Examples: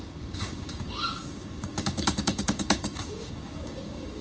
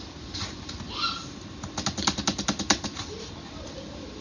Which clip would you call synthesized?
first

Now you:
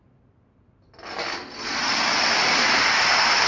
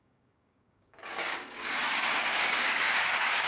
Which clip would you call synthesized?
second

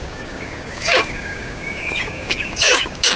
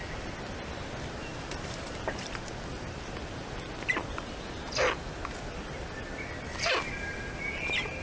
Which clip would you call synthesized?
first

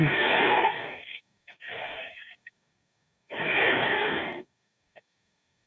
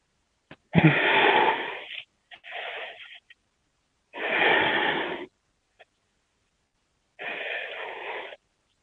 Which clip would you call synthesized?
first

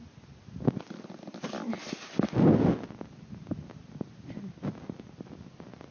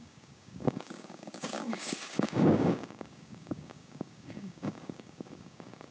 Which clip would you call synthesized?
second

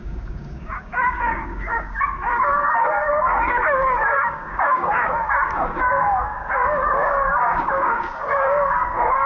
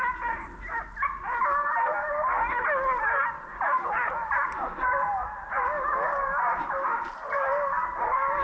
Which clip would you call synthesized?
first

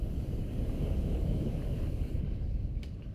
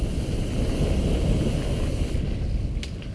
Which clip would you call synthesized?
first